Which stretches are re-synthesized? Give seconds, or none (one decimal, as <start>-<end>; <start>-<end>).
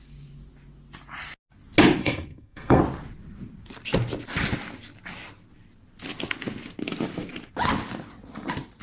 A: 2.0-2.8